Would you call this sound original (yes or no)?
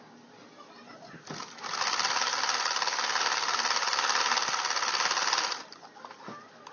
yes